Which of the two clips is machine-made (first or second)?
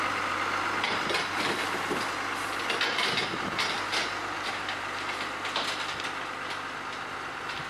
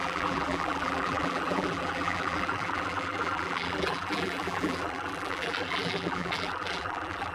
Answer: second